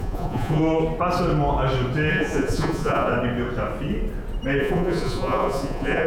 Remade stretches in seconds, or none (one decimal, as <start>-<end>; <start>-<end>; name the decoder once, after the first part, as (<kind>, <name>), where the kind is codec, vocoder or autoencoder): 0.0-0.6 (vocoder, Vocos); 2.1-3.1; 4.6-6.1